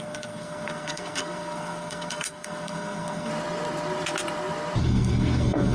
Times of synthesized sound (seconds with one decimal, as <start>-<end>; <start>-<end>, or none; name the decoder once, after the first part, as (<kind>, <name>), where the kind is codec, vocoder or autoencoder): 0.0-3.3 (codec, SNAC); 4.8-5.7